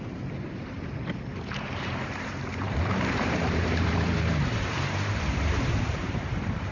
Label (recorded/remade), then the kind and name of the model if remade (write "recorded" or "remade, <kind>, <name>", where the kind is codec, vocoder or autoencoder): remade, vocoder, BigVGAN v2